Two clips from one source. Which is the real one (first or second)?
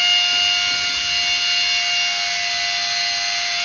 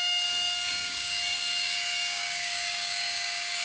first